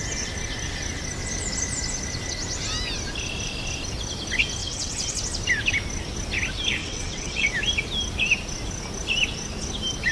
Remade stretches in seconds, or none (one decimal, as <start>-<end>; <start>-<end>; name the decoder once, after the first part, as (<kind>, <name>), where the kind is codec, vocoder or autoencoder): 4.6-5.2 (vocoder, WaveNeXt); 6.8-7.5